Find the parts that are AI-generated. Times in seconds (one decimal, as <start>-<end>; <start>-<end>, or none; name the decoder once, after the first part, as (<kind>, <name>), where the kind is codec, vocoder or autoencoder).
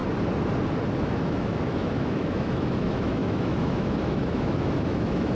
1.0-5.3 (autoencoder, DAC-VAE)